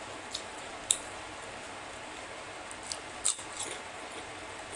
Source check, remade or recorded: recorded